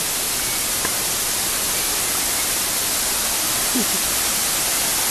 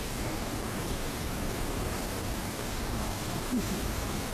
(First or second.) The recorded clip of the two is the first